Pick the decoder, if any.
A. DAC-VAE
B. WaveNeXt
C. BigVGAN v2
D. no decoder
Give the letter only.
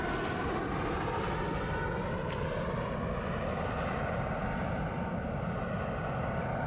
D